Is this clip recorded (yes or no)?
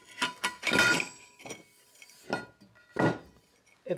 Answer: yes